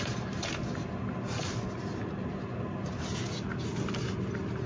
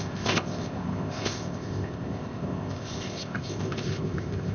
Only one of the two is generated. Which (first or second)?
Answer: second